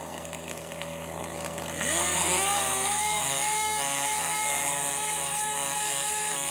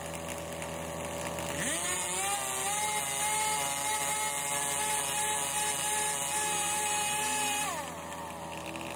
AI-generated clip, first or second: first